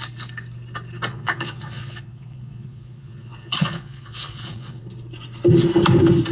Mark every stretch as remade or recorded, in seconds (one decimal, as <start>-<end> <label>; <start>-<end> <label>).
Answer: 0.0-1.1 recorded; 1.1-4.8 remade; 4.8-6.3 recorded